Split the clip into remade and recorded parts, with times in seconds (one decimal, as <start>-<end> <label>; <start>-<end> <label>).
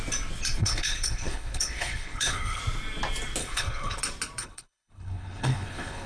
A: 0.0-0.6 recorded; 0.6-2.6 remade; 2.6-3.4 recorded; 3.4-4.0 remade; 4.0-4.4 recorded; 4.4-6.1 remade